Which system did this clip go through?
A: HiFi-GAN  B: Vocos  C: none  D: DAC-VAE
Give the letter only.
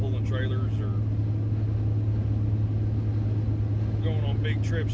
C